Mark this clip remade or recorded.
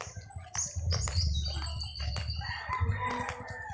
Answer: recorded